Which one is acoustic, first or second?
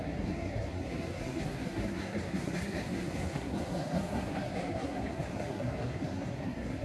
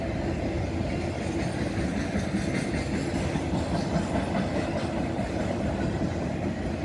second